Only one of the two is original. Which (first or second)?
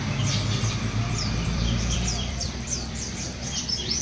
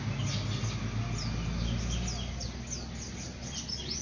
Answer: second